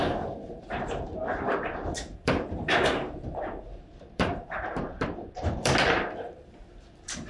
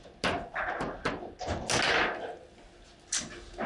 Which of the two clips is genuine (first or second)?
second